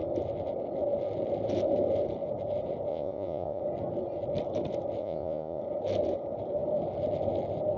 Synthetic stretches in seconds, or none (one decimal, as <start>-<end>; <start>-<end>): 2.9-3.6; 5.0-5.6